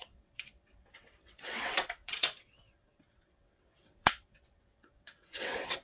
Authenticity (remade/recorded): remade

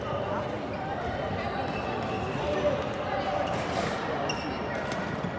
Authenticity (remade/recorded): recorded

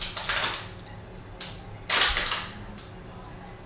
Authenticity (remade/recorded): recorded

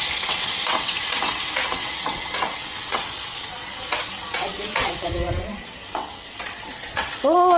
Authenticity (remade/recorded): remade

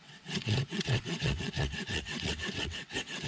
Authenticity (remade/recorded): remade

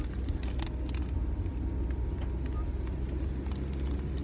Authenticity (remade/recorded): recorded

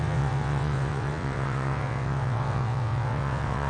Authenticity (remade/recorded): remade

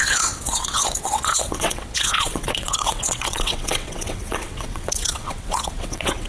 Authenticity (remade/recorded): remade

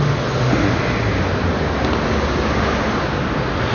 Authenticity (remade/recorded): recorded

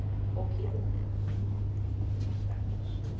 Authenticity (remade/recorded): recorded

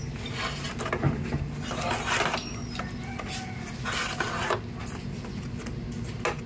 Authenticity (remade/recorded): recorded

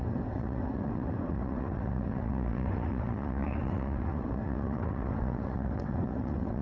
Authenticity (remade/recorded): remade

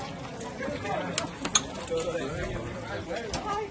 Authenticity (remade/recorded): recorded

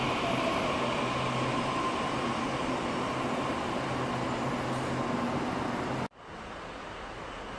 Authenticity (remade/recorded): recorded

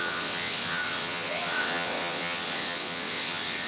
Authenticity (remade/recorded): remade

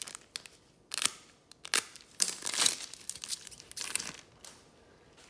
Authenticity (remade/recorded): recorded